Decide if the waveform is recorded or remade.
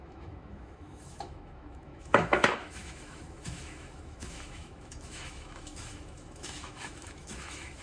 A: remade